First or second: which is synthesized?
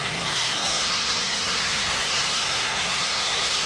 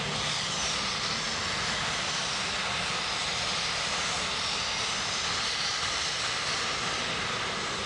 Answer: first